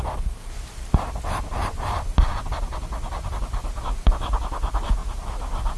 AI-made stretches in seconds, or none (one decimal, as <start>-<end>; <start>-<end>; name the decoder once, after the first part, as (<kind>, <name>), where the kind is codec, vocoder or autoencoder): none